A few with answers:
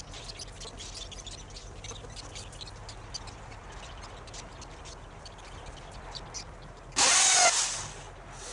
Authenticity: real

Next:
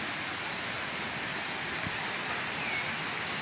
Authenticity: real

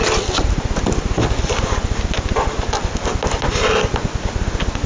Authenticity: real